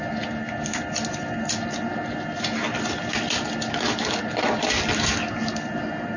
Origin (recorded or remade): recorded